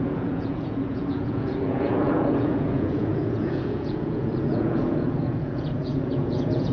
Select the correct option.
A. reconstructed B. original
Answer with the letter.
A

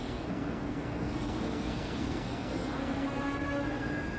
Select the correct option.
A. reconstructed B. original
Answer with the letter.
A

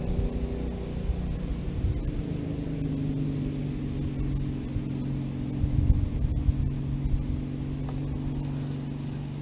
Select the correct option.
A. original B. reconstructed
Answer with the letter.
A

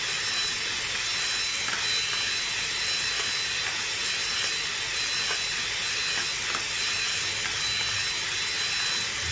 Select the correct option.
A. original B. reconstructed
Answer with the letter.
A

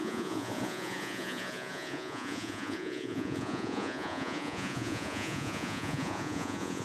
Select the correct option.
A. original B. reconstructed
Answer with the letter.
B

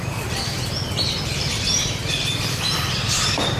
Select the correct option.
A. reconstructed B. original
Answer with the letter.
A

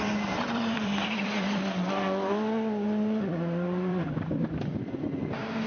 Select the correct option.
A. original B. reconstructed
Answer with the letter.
B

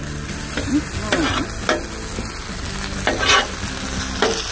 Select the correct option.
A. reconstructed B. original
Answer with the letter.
B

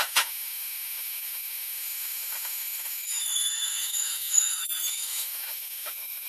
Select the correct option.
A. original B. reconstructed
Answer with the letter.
B